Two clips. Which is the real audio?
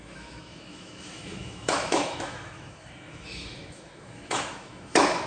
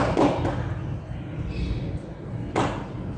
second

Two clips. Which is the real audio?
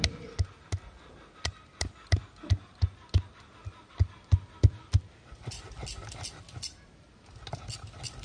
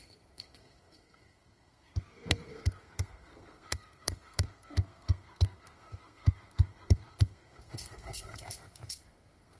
first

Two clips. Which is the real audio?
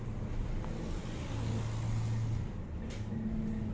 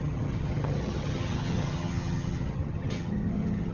first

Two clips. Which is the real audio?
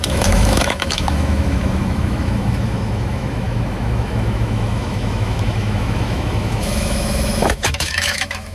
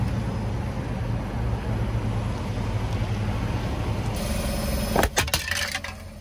second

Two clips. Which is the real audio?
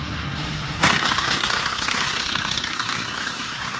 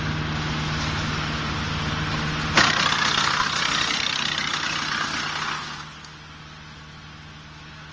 second